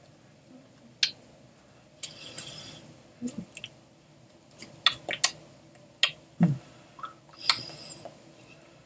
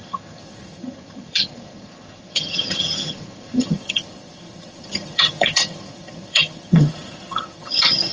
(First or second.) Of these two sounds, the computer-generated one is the second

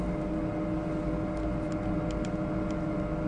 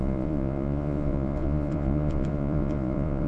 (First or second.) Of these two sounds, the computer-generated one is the second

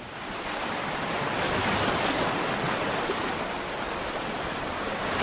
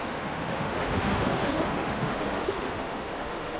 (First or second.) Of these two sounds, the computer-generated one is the second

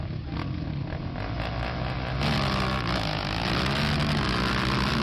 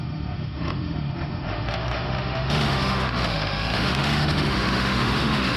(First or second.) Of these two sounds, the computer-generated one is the second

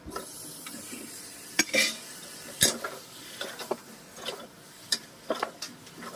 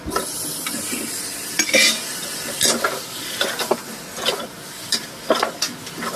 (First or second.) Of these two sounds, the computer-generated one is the first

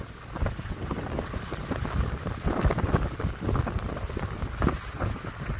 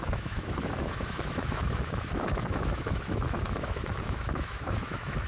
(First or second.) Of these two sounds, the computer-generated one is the second